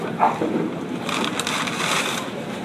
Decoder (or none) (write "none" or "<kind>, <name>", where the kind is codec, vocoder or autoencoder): none